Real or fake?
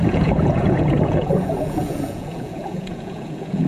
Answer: fake